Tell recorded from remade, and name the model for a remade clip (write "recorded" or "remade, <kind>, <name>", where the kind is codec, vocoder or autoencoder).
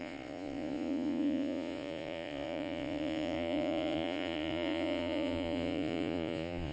remade, vocoder, Vocos